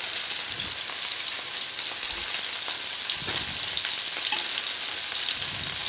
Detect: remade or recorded recorded